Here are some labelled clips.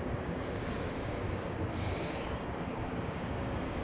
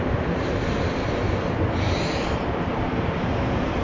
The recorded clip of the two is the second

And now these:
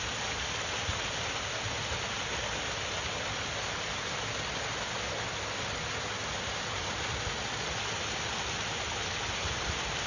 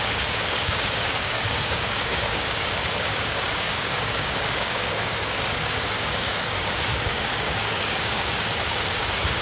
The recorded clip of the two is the first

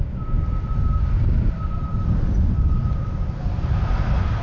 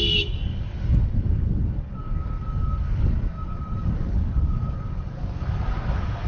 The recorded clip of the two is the first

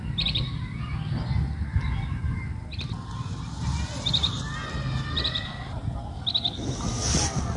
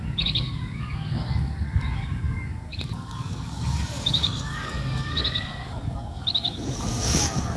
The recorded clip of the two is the first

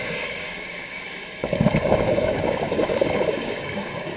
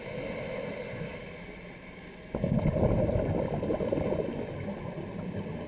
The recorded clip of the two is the second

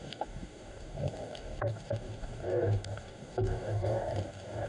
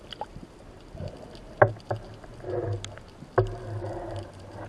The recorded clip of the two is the second